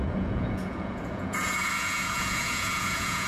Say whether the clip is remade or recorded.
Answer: remade